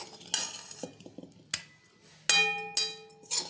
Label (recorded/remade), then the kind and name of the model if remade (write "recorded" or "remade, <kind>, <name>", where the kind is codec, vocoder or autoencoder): recorded